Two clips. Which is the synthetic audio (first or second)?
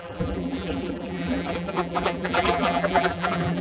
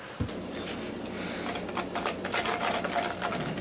first